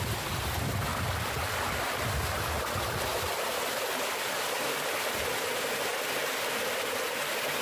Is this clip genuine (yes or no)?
yes